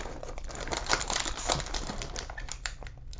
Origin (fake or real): fake